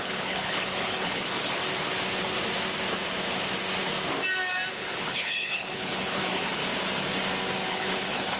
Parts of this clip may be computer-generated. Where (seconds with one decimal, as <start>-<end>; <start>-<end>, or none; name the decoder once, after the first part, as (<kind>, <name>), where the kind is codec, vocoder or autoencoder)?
0.0-1.6 (codec, HILCodec); 4.7-6.6; 7.7-8.4

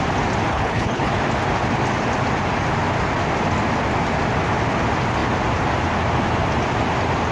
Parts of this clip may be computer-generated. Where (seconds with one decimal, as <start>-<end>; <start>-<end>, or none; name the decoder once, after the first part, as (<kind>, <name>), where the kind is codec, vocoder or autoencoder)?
0.5-1.1 (codec, HILCodec)